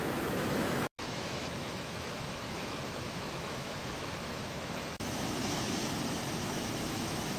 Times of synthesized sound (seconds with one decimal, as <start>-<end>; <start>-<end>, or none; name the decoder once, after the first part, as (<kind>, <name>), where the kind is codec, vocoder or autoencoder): 0.0-5.8 (autoencoder, DAC-VAE); 6.5-7.4